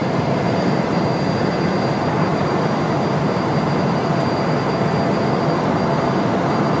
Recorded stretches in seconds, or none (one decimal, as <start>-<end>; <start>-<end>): 0.9-2.3; 2.9-4.0; 5.8-6.8